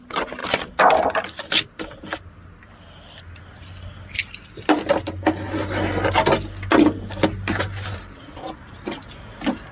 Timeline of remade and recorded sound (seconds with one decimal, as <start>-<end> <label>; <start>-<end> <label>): 0.0-9.7 recorded